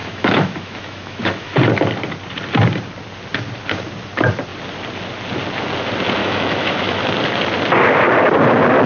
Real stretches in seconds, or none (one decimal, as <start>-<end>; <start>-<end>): 1.6-6.2; 7.0-8.9